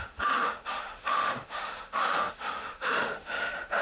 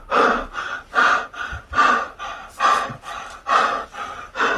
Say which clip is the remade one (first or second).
first